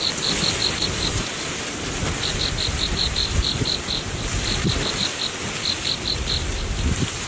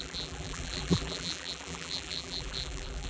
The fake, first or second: second